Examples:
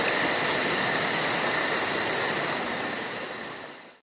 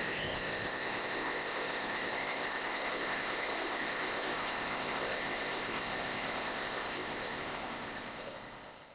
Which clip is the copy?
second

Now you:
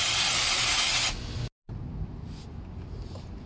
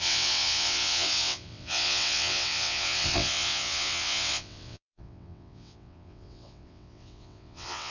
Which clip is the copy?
second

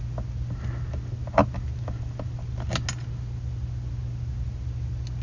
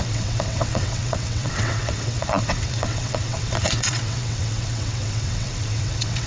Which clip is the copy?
second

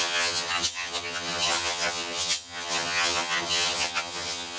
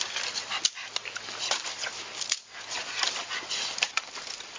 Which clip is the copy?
first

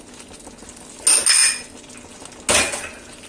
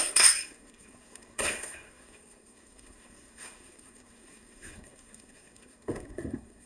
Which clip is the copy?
second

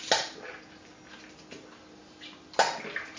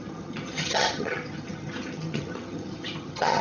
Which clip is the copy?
second